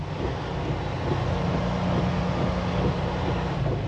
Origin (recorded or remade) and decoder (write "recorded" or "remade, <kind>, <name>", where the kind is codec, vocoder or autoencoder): recorded